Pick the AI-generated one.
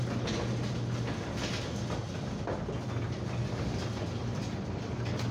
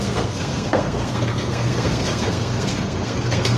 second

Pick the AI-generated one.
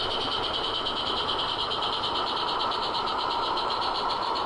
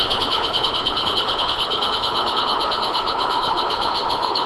second